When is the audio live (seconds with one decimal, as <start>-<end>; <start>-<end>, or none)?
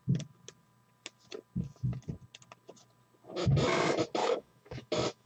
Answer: 0.0-4.2